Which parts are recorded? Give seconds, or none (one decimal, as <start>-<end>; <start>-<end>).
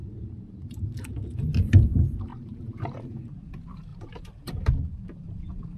1.1-2.3; 3.2-3.9; 4.5-5.8